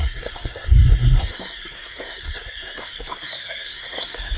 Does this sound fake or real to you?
fake